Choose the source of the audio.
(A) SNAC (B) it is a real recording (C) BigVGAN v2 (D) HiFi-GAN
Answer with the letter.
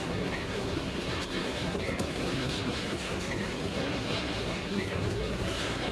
A